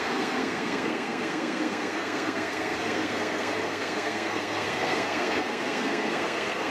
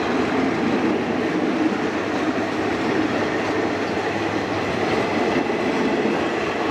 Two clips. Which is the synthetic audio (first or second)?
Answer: first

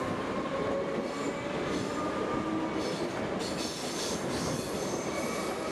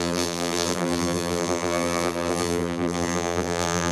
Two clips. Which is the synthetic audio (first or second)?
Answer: second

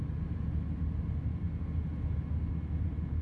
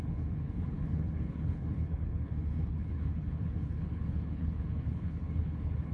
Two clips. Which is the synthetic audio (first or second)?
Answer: second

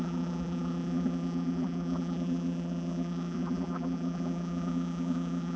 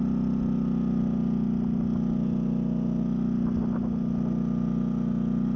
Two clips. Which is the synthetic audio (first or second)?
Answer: first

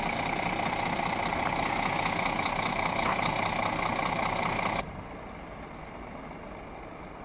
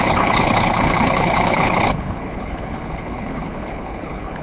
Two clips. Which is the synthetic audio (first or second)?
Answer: second